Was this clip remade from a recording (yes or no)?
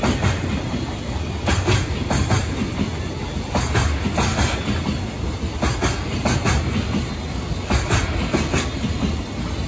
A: no